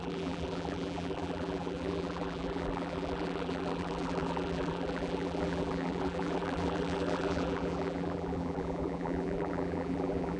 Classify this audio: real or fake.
fake